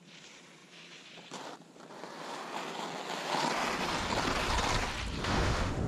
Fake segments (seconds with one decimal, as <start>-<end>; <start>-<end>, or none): 5.2-5.9